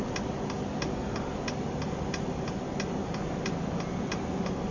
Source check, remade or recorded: recorded